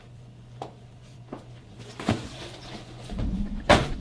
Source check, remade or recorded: remade